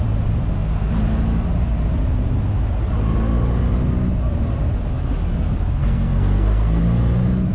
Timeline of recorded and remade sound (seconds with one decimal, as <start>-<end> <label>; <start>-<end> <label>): 0.0-5.8 recorded; 5.8-6.8 remade; 6.8-7.5 recorded